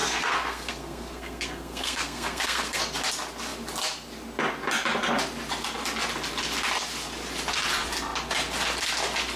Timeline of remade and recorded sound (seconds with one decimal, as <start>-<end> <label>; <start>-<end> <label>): 0.0-2.8 remade; 2.8-9.4 recorded